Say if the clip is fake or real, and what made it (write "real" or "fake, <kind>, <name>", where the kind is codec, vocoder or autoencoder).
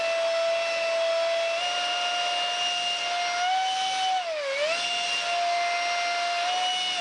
real